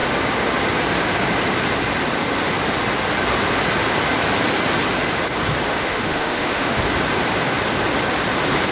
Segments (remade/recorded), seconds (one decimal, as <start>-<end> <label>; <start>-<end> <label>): 0.0-5.7 recorded; 5.7-6.8 remade; 6.8-8.7 recorded